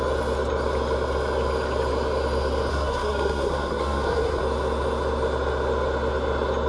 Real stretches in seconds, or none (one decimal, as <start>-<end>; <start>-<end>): 0.0-2.7; 4.4-6.7